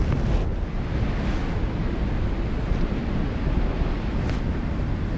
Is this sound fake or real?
real